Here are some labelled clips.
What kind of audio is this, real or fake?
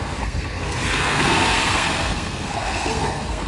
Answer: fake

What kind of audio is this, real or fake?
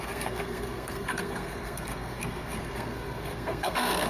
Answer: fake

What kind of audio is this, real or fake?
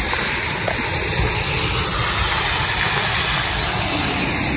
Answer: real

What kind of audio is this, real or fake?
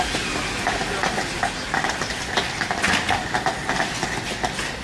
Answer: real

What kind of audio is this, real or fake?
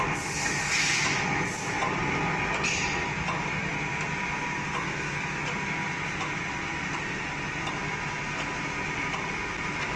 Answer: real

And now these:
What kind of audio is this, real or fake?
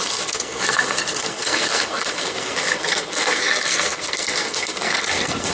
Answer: fake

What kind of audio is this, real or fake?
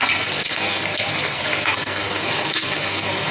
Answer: fake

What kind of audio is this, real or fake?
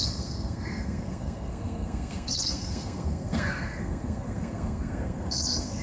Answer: fake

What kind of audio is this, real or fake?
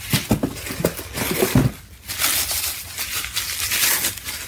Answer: real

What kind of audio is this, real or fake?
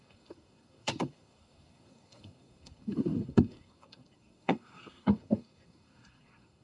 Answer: fake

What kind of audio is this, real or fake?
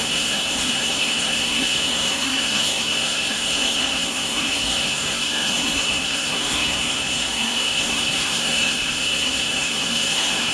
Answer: fake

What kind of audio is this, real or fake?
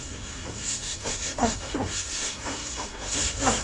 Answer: fake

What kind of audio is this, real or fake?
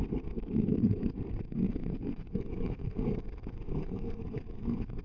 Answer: fake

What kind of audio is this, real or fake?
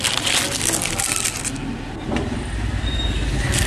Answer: real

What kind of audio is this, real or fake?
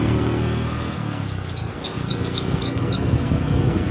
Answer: fake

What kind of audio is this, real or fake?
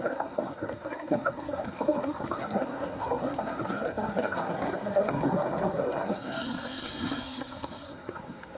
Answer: fake